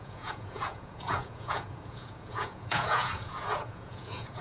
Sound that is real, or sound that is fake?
fake